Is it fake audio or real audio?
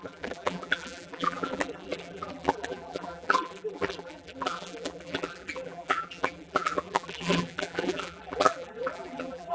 fake